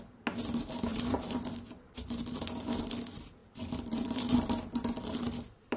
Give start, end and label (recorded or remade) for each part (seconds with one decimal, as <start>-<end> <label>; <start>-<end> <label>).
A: 0.0-0.9 recorded; 0.9-1.5 remade; 1.5-3.4 recorded; 3.4-5.8 remade